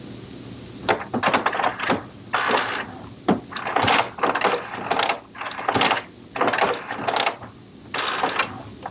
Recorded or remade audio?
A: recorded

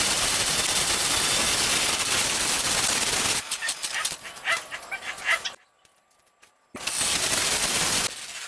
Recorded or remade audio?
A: recorded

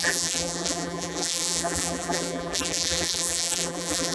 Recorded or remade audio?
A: remade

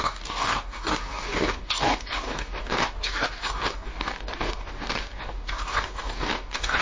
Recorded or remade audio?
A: remade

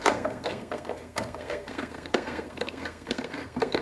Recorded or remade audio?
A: remade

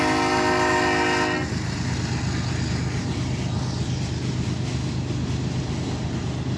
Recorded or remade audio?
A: recorded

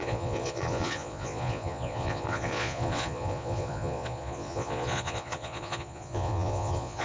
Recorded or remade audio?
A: remade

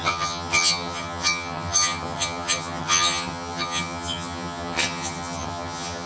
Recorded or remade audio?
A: remade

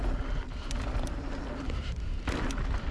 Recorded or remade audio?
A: recorded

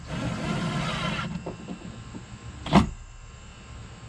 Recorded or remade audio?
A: recorded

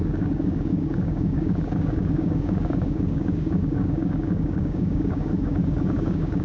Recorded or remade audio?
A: remade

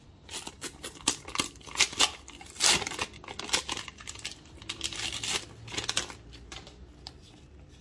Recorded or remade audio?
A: recorded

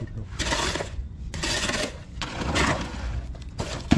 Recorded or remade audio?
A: remade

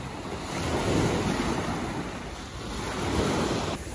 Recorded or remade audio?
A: recorded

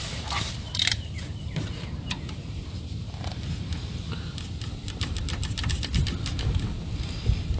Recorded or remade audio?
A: recorded